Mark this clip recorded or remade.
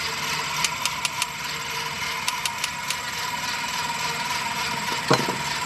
recorded